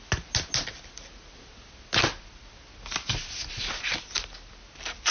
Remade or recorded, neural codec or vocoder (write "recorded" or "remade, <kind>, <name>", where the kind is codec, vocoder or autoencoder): recorded